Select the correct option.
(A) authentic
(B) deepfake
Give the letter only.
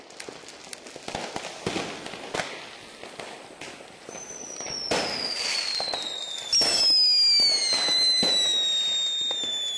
A